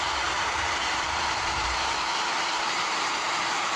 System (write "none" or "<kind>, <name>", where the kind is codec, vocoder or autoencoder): vocoder, BigVGAN v2